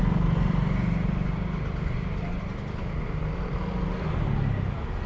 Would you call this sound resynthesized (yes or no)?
no